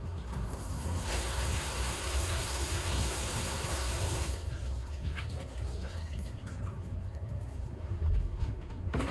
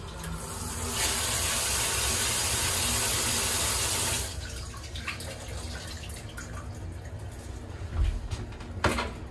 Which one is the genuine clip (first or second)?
second